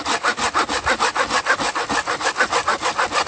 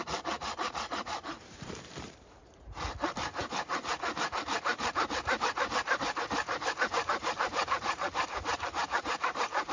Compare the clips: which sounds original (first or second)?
first